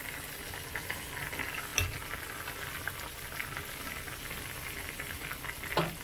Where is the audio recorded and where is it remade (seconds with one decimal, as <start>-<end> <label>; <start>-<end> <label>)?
0.0-6.0 recorded